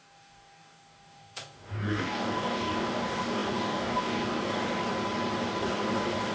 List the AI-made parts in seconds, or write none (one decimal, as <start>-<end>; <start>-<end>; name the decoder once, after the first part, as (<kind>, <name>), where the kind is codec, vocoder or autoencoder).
0.0-4.9 (codec, DAC); 5.6-6.3